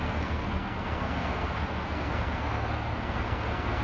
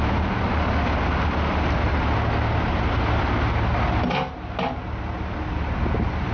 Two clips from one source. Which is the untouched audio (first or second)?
second